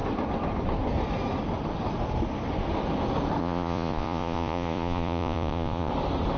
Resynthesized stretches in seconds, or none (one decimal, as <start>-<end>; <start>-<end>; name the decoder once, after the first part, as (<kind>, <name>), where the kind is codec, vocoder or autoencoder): 3.4-5.9 (vocoder, Vocos)